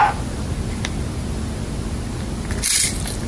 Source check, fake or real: real